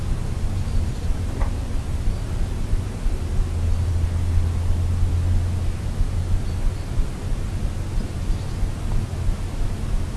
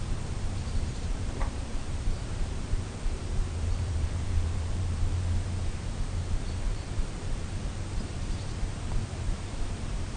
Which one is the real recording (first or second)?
first